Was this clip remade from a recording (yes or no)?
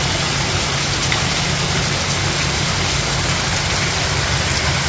no